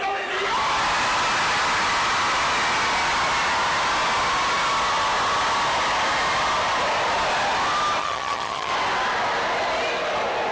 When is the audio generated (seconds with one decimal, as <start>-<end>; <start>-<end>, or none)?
8.0-8.7